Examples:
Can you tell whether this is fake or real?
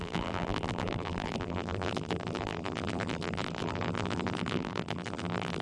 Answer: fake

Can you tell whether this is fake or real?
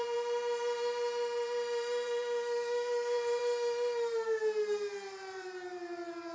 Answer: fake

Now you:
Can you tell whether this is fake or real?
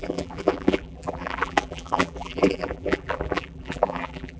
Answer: fake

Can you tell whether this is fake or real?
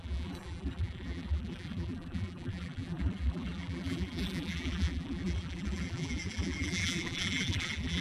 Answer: fake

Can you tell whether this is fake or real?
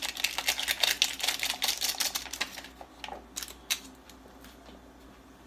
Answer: real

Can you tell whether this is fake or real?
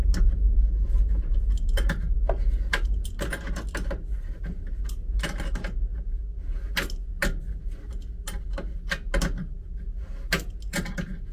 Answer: real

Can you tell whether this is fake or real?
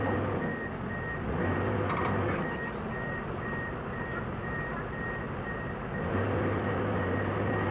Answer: real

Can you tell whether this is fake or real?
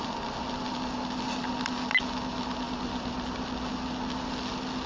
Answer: real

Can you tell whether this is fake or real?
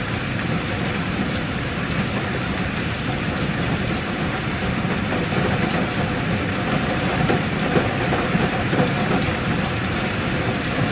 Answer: fake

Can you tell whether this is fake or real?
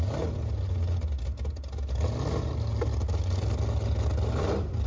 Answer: real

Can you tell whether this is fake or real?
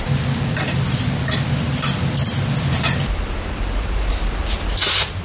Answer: fake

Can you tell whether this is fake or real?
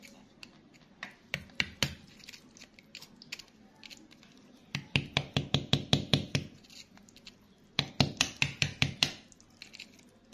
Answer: real